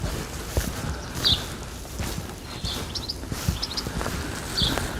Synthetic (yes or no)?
no